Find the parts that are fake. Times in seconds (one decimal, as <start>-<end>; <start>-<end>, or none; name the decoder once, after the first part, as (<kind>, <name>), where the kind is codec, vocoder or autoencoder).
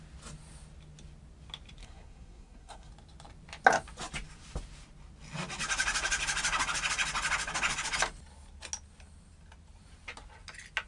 1.8-2.9 (codec, SNAC)